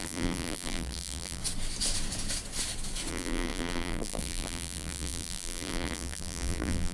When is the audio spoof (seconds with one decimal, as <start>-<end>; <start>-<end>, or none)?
0.0-1.4; 3.1-6.9